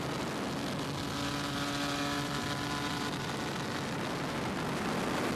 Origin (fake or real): real